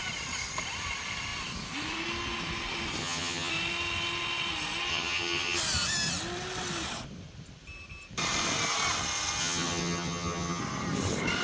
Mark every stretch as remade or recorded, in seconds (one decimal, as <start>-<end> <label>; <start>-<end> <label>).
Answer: 0.0-3.0 recorded; 3.0-3.5 remade; 3.5-4.9 recorded; 4.9-5.6 remade; 5.6-9.4 recorded; 9.4-10.6 remade; 10.6-11.4 recorded